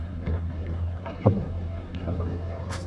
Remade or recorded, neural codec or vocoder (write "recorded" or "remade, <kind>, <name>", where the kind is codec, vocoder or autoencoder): remade, codec, SNAC